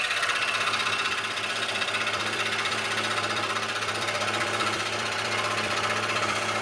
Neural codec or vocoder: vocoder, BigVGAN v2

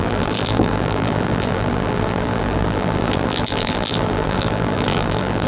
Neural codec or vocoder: vocoder, BigVGAN v2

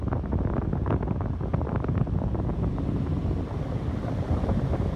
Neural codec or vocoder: none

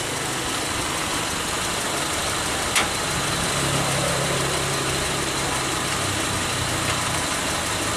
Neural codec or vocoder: none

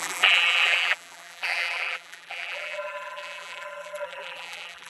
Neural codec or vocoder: vocoder, BigVGAN v2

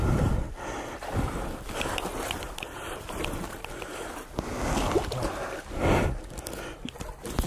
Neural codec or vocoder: none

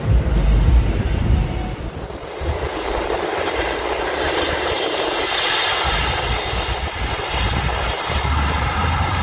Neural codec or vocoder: vocoder, BigVGAN v2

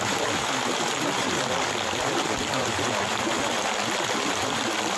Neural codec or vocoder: vocoder, BigVGAN v2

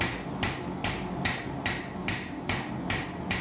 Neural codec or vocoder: none